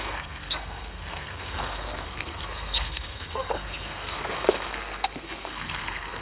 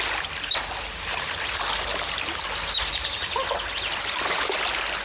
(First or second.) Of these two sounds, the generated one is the first